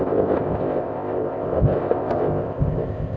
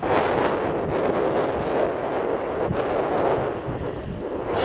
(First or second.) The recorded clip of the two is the second